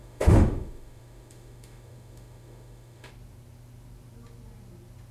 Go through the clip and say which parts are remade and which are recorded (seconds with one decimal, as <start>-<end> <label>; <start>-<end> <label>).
0.0-3.1 remade; 3.1-5.1 recorded